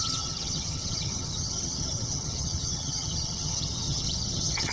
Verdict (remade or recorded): remade